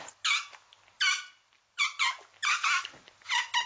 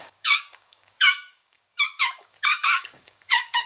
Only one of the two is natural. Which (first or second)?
first